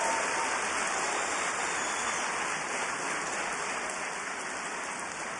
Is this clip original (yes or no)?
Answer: yes